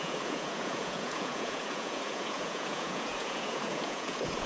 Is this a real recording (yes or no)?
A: no